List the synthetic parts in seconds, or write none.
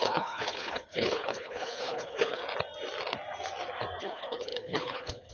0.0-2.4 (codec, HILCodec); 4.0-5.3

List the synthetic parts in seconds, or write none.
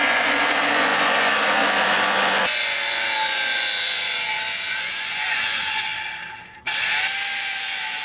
0.0-5.9 (vocoder, Vocos); 7.4-8.0